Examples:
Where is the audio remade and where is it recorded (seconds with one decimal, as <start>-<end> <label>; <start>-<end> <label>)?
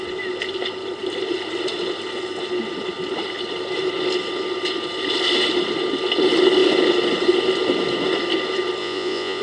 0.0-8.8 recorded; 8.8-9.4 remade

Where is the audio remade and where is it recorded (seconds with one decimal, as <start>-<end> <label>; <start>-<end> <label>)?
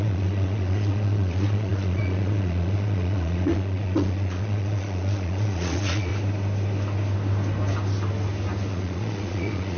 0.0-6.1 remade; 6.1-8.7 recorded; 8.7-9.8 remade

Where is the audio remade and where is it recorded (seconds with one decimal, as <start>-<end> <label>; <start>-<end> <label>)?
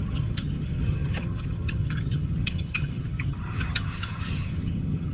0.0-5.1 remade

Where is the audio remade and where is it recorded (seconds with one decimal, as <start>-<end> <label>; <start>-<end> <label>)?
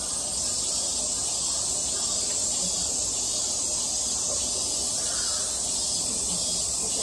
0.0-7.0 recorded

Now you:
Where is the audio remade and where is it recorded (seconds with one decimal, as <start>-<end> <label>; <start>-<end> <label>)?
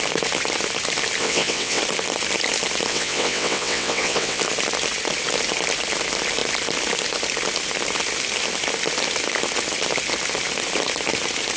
0.0-1.2 recorded; 1.2-1.8 remade; 1.8-2.9 recorded; 2.9-4.4 remade; 4.4-11.6 recorded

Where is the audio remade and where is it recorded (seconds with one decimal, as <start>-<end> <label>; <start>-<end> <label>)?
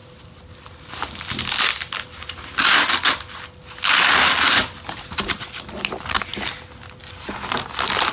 0.0-8.1 recorded